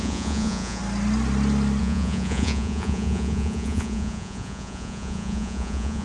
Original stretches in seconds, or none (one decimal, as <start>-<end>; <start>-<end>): 0.8-1.8